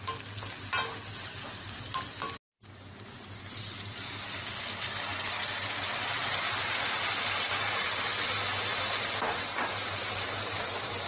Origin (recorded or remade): recorded